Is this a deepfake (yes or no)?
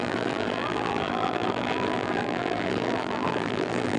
yes